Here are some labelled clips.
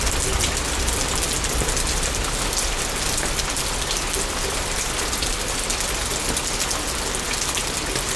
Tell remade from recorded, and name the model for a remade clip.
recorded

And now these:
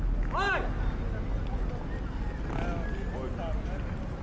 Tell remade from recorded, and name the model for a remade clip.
recorded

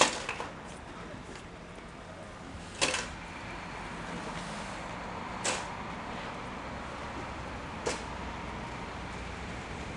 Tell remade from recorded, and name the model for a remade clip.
recorded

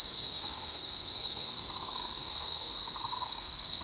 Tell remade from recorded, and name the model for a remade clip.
remade, codec, SNAC